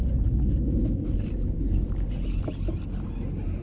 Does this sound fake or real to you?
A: real